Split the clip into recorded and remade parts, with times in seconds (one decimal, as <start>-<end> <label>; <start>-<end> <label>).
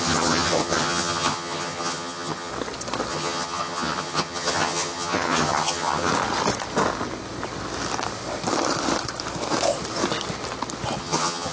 0.0-2.5 remade; 2.5-3.1 recorded; 3.1-6.1 remade; 6.1-11.0 recorded; 11.0-11.5 remade